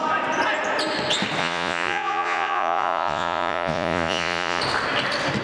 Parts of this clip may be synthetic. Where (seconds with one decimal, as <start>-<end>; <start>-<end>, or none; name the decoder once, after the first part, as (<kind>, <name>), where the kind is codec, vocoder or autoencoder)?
1.4-4.6 (vocoder, Vocos)